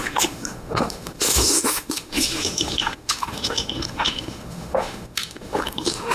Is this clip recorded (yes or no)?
no